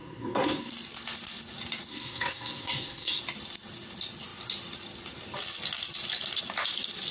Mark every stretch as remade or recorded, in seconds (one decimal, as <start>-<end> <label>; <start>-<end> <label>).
0.0-0.7 remade; 0.7-1.9 recorded; 1.9-3.2 remade; 3.2-7.1 recorded